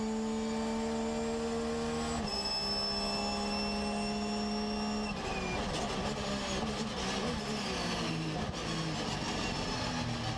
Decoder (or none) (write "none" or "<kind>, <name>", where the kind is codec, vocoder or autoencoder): none